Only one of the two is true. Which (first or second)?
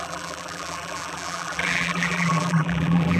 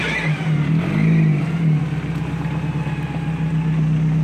second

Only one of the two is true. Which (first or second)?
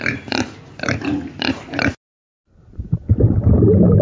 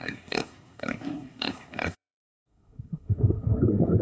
first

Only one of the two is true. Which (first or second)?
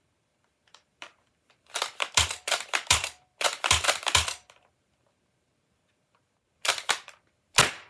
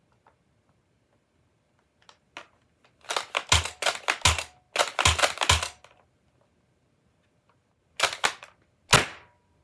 second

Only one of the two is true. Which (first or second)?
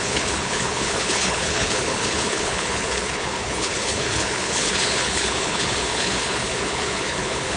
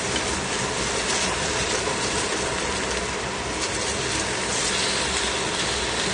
second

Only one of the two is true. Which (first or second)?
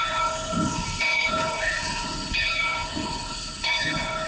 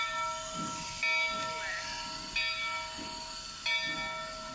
second